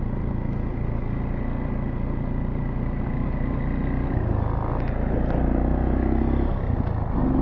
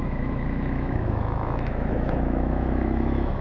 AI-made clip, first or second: second